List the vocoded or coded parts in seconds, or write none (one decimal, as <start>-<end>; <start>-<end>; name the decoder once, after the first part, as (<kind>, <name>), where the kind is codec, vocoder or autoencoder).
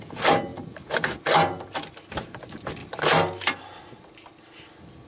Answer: none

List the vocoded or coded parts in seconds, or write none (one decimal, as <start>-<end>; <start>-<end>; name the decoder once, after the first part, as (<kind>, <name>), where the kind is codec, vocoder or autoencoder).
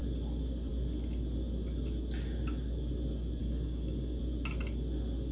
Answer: 3.4-4.2 (codec, DAC)